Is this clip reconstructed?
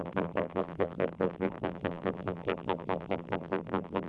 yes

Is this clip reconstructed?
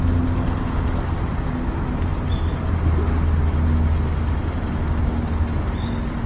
no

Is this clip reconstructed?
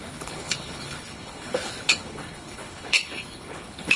yes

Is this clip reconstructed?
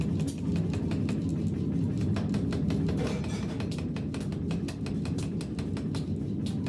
no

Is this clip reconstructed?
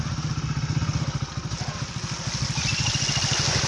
no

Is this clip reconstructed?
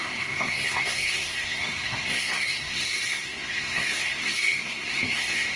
yes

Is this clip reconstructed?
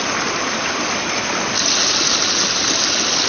no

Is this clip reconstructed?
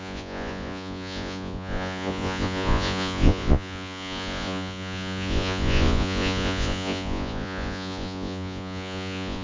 yes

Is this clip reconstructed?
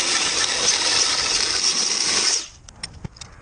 no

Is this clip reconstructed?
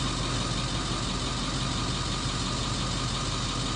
no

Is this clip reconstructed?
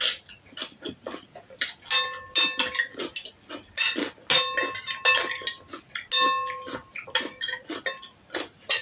no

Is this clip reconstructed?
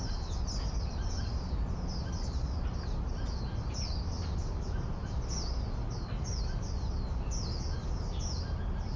no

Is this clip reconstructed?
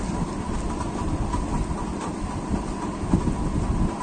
no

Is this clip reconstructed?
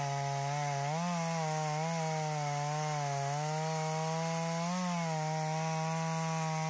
no